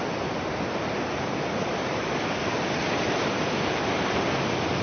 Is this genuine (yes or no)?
yes